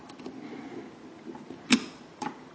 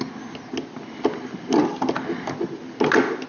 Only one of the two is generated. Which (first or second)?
first